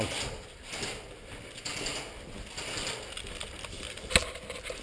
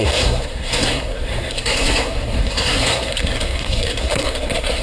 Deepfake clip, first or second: second